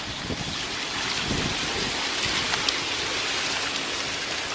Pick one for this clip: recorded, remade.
recorded